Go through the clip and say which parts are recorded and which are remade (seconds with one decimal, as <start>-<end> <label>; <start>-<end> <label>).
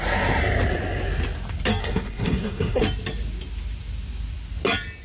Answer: 0.0-1.8 recorded; 1.8-2.8 remade; 2.8-5.0 recorded